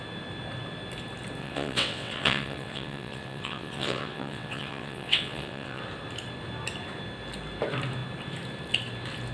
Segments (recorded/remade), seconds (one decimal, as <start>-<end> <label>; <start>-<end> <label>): 0.0-1.4 recorded; 1.4-5.8 remade; 5.8-9.3 recorded